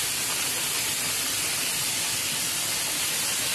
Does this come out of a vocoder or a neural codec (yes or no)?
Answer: no